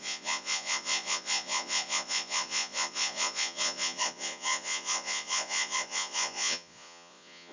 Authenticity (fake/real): fake